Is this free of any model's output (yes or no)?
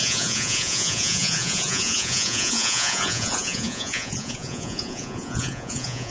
no